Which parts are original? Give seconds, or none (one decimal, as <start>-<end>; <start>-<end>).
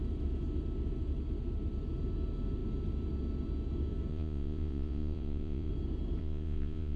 0.0-4.1; 5.7-6.2